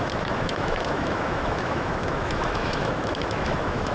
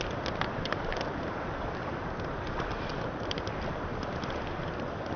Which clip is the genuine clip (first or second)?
second